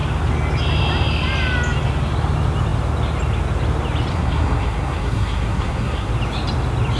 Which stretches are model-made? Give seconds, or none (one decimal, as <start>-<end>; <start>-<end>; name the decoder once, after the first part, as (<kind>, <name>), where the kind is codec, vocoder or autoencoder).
4.1-6.1 (codec, SNAC)